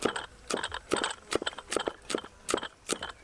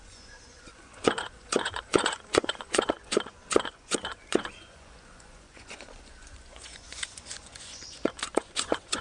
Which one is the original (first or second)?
first